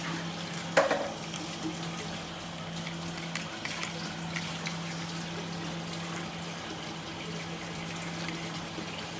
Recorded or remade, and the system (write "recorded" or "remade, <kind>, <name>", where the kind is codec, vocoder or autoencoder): recorded